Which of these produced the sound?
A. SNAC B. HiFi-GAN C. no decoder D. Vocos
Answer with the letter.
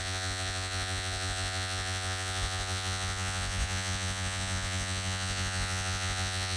D